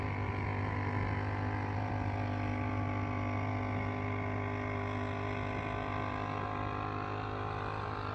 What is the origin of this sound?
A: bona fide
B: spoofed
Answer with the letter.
A